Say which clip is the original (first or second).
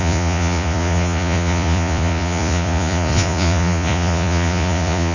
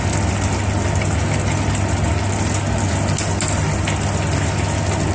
second